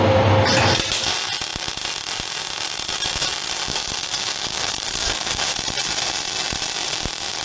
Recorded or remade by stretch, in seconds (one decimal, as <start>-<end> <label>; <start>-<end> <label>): 0.0-4.5 recorded; 4.5-5.4 remade; 5.4-7.4 recorded